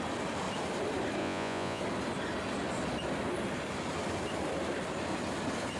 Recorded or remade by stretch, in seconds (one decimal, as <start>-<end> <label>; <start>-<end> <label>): 0.0-1.2 recorded; 1.2-1.8 remade; 1.8-5.8 recorded